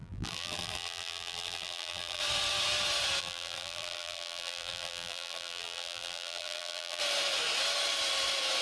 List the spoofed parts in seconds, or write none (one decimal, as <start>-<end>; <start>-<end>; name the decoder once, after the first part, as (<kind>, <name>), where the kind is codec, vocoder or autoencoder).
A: 0.0-2.2 (vocoder, BigVGAN v2); 3.2-7.0

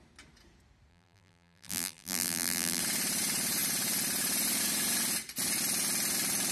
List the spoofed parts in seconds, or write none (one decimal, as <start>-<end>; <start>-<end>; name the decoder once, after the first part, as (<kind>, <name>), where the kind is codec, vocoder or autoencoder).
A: 0.9-2.8 (vocoder, BigVGAN v2)

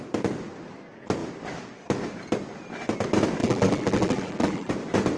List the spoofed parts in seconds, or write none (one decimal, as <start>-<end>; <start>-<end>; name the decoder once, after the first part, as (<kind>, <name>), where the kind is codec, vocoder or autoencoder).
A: 3.4-4.7 (vocoder, BigVGAN v2)

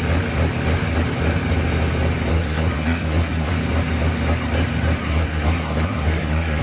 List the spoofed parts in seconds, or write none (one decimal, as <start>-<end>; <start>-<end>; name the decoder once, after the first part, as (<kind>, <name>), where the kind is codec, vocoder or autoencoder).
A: 2.3-3.5 (codec, SNAC); 5.0-6.6

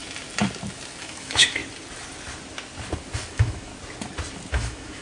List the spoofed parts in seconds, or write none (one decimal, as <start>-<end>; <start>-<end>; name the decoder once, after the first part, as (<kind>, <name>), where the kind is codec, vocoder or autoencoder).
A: 1.0-1.6 (autoencoder, DAC-VAE); 3.3-3.7; 4.5-5.0

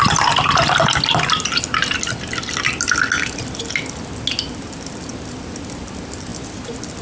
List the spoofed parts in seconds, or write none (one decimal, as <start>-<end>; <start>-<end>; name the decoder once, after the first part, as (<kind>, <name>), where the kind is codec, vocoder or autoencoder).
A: none

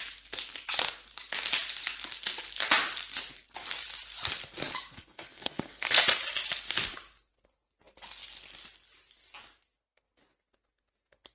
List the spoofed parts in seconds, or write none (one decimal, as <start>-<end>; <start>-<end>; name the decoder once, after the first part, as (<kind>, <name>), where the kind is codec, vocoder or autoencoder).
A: 4.7-6.0 (codec, SNAC)

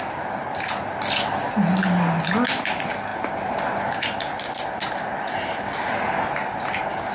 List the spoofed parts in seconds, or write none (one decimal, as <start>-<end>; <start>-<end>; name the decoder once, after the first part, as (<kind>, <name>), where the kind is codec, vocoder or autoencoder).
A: none